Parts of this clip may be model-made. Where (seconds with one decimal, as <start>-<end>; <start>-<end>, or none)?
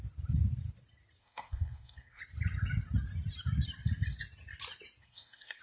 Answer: 1.2-2.2; 5.0-5.6